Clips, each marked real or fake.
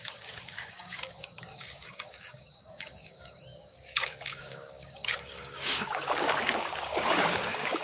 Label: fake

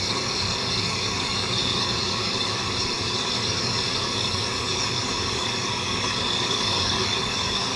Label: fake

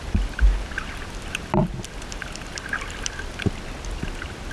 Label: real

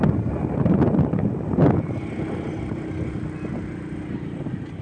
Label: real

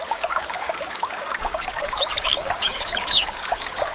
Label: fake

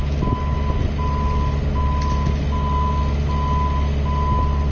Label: real